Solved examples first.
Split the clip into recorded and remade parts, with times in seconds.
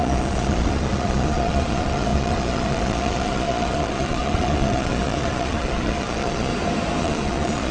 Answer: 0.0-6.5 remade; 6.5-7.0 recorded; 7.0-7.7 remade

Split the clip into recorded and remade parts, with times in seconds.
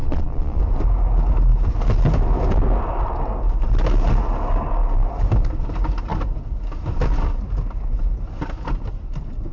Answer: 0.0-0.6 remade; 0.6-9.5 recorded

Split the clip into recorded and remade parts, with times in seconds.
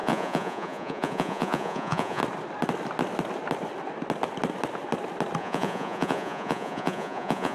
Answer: 0.0-2.2 remade; 2.2-5.4 recorded; 5.4-7.5 remade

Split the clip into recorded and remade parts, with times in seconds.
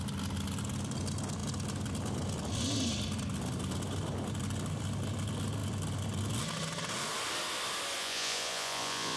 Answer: 0.0-8.0 recorded; 8.0-9.2 remade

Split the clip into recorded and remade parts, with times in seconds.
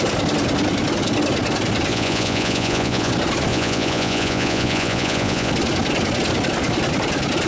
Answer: 0.0-1.9 recorded; 1.9-3.1 remade; 3.1-3.5 recorded; 3.5-5.5 remade; 5.5-7.5 recorded